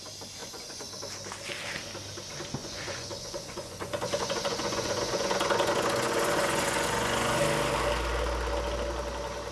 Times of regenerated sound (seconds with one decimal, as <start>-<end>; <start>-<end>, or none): 0.4-0.9; 2.6-7.4